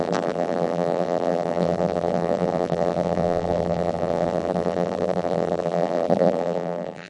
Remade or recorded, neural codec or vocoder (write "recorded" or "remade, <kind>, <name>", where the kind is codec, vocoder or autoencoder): remade, vocoder, BigVGAN v2